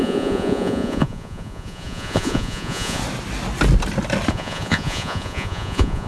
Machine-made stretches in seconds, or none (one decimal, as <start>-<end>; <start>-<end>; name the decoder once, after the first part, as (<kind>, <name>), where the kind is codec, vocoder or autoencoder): 0.0-3.0 (vocoder, Vocos); 4.3-6.1

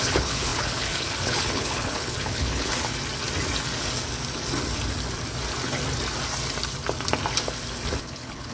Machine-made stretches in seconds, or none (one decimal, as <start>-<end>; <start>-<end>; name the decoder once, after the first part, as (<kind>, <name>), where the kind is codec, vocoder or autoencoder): 0.0-2.9 (codec, HILCodec); 8.0-8.5

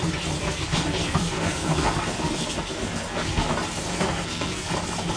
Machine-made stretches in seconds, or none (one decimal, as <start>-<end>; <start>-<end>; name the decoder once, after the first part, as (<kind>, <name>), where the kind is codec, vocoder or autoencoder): 0.4-3.5 (codec, SNAC); 3.9-4.7

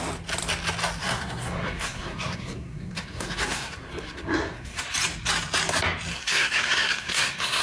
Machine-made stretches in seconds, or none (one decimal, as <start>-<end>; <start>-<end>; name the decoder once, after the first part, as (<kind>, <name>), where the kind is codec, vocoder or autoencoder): 1.0-4.8 (codec, SNAC); 6.1-7.6

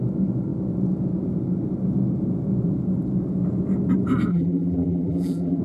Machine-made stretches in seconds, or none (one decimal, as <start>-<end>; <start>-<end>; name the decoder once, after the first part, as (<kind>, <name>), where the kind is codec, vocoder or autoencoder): 4.3-5.6 (vocoder, BigVGAN v2)